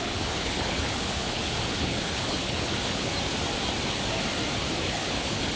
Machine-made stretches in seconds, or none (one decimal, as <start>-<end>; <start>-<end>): 0.0-3.1; 4.8-5.6